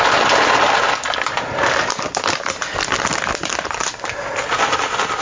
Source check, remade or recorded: recorded